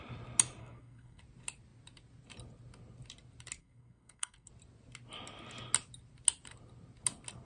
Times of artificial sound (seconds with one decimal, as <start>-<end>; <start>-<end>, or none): 0.6-1.2; 3.6-4.5